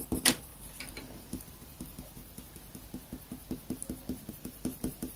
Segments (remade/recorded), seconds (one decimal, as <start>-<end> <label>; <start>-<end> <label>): 0.0-2.2 remade; 2.2-4.3 recorded; 4.3-5.2 remade